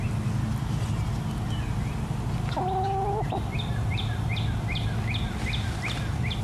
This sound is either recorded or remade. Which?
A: recorded